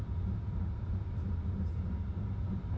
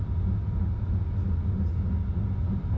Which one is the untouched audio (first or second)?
second